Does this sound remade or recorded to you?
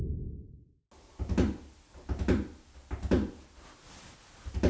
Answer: recorded